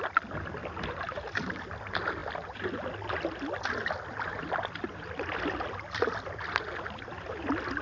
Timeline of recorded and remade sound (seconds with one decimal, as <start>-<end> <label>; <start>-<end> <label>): 0.0-7.8 recorded